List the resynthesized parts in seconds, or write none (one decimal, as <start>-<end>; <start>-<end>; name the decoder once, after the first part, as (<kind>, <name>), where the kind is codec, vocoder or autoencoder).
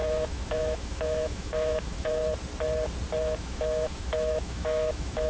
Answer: 0.0-2.2 (autoencoder, DAC-VAE); 3.2-5.3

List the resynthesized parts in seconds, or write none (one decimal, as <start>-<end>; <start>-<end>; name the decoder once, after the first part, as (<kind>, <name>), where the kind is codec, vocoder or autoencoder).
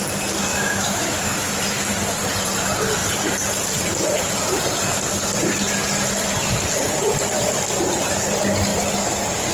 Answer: 0.5-1.5 (autoencoder, DAC-VAE)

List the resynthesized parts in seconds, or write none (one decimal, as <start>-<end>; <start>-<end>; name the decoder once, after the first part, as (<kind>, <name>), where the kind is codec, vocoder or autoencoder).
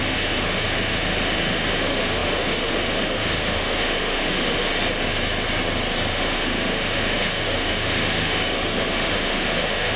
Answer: 0.0-4.7 (autoencoder, DAC-VAE); 6.1-10.0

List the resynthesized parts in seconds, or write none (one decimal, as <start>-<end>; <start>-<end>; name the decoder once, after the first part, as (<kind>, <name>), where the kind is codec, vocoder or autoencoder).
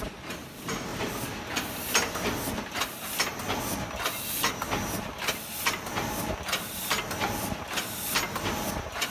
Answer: none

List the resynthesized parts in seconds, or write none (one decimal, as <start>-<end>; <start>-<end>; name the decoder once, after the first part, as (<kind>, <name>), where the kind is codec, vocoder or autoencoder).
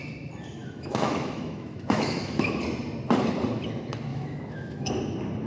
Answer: 0.6-2.6 (autoencoder, DAC-VAE); 4.1-4.9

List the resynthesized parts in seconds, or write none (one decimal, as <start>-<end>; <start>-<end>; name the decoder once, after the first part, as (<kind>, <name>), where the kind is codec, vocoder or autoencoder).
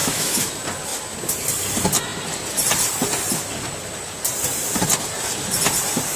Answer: 0.0-0.5 (autoencoder, DAC-VAE)